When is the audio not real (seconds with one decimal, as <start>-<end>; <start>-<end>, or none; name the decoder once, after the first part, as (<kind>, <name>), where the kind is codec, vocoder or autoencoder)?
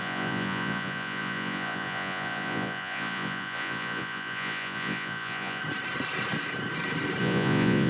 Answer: 0.0-5.6 (vocoder, Vocos); 7.2-7.9